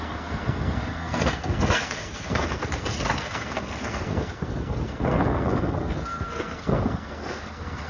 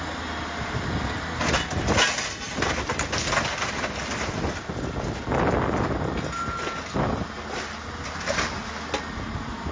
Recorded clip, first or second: second